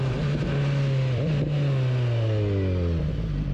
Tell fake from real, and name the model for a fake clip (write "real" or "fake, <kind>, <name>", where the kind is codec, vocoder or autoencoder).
real